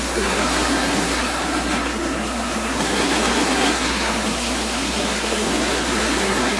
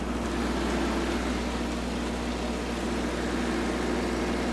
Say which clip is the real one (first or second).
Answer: second